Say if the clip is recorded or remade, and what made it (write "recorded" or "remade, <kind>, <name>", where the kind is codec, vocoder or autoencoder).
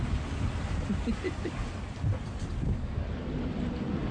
recorded